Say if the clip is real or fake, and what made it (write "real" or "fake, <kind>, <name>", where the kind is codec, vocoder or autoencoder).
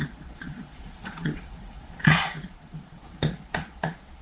fake, vocoder, Vocos